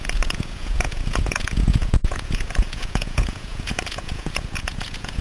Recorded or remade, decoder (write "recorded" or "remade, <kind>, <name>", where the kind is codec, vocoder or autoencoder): remade, vocoder, Vocos